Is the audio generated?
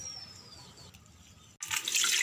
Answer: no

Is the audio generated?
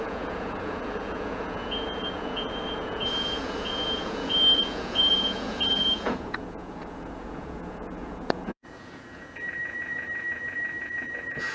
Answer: yes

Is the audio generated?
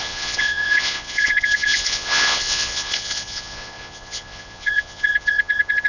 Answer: yes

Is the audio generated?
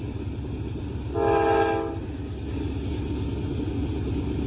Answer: no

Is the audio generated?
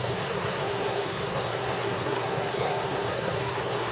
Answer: yes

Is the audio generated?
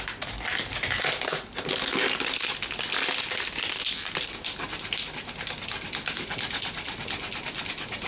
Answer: no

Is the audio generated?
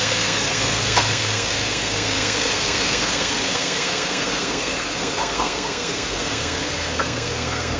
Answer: yes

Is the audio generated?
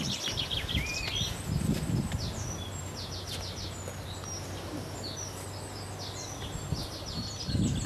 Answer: no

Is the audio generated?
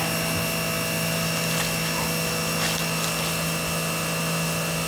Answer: no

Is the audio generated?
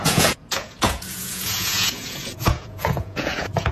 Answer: yes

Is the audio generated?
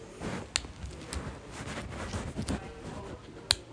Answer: no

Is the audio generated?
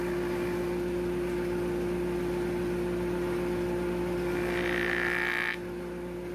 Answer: no